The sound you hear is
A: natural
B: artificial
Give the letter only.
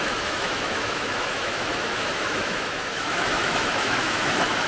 B